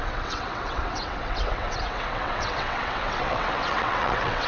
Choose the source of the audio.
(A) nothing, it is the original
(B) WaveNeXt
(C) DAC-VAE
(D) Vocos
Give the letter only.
B